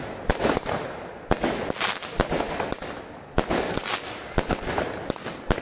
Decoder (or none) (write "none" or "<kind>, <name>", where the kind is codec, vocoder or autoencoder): none